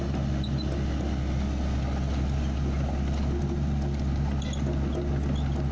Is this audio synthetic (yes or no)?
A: no